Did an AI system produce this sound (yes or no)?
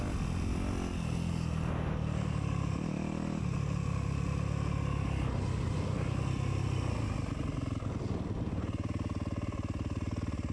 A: no